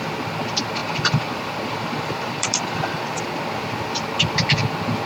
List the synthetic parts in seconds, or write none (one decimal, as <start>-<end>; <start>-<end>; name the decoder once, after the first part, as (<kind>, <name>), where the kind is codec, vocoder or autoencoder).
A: 0.8-3.0 (vocoder, BigVGAN v2)

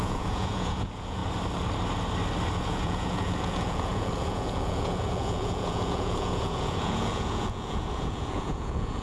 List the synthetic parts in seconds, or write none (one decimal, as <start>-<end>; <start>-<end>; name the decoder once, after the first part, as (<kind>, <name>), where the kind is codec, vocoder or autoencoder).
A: 0.0-1.2 (vocoder, Vocos); 2.6-9.0